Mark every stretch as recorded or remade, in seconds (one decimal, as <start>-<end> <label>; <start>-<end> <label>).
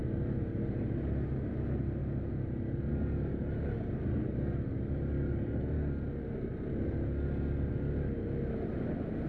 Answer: 0.0-9.3 recorded